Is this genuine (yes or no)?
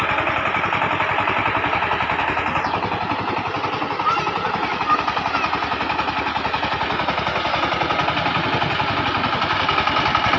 yes